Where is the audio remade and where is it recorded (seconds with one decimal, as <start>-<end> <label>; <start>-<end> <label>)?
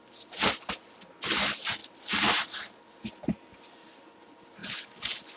0.0-5.4 recorded